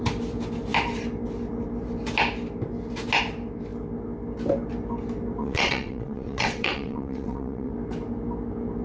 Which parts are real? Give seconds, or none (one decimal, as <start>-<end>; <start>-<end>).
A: 0.0-5.4; 7.7-8.8